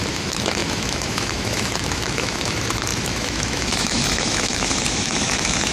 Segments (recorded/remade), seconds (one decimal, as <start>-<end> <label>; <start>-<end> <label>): 0.0-5.7 remade